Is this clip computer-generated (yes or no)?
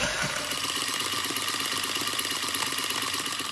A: no